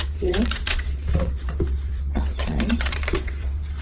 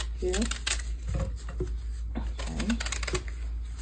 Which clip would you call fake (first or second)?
first